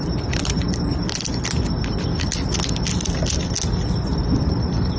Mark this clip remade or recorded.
recorded